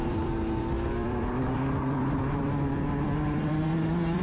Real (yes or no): no